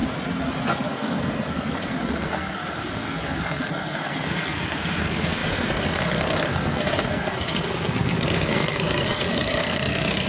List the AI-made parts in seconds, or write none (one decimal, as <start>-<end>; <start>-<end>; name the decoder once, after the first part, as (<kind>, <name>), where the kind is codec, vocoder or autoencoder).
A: 0.7-10.3 (codec, SNAC)